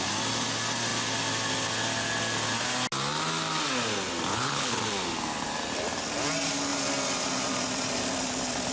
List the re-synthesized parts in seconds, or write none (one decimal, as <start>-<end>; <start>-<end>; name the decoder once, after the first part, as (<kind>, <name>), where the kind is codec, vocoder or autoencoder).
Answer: 4.3-4.8 (codec, HILCodec)